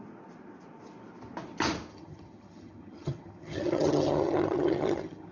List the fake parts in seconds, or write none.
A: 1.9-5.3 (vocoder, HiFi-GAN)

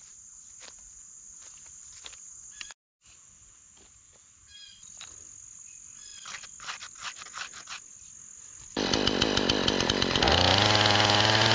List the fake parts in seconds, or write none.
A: none

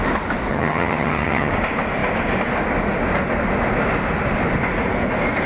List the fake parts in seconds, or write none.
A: 0.5-1.5 (vocoder, HiFi-GAN)